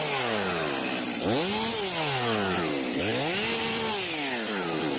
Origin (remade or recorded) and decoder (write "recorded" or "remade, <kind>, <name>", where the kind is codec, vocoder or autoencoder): recorded